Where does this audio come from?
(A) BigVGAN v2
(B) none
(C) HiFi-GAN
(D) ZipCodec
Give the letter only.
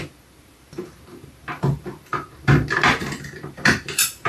A